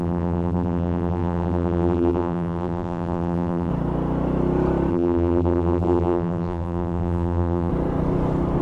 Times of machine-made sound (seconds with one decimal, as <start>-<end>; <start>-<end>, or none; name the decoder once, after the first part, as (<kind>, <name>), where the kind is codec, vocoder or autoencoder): 0.0-3.7 (vocoder, BigVGAN v2); 4.9-7.7